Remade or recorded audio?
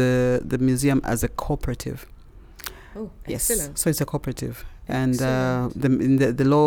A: recorded